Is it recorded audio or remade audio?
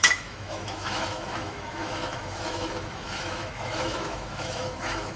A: remade